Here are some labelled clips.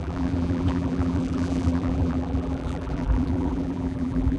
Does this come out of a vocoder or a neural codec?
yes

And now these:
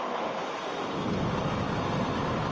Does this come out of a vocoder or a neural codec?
no